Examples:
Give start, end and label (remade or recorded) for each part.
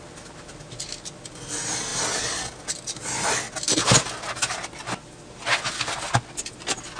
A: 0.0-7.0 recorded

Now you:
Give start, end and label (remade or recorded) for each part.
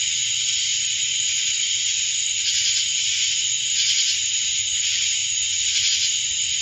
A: 0.0-6.6 recorded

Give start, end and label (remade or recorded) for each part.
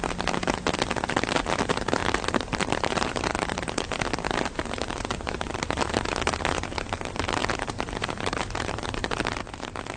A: 0.0-2.0 recorded; 2.0-5.9 remade; 5.9-7.4 recorded; 7.4-9.4 remade; 9.4-10.0 recorded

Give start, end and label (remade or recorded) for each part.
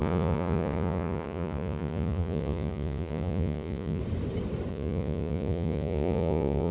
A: 0.0-4.0 remade; 4.0-4.7 recorded; 4.7-6.7 remade